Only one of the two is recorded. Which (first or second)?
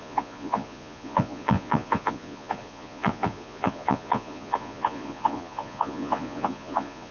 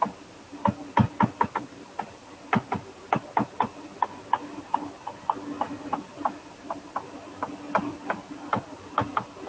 second